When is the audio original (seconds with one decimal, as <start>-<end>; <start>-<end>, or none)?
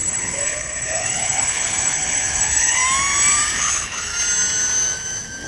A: 2.8-3.6; 4.1-5.5